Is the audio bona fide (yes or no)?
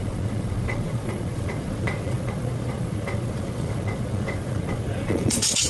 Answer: no